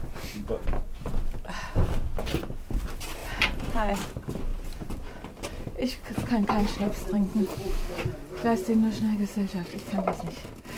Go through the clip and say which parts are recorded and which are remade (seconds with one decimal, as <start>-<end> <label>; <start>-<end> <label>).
0.0-3.2 recorded; 3.2-3.9 remade; 3.9-4.5 recorded; 4.5-7.7 remade; 7.7-9.3 recorded; 9.3-10.2 remade; 10.2-10.8 recorded